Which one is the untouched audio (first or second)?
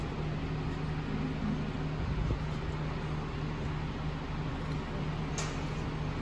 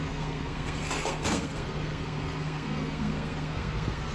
first